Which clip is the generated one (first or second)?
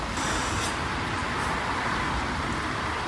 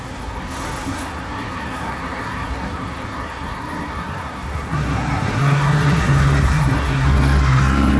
second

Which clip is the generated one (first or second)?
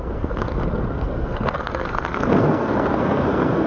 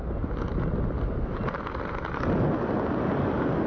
first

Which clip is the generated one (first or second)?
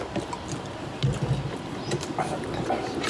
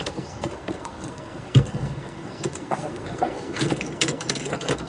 second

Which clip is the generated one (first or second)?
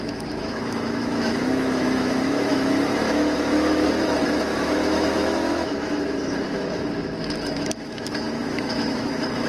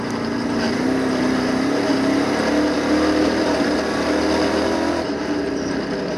first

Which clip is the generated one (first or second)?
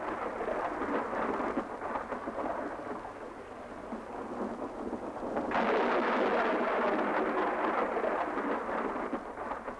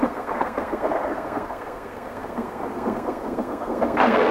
second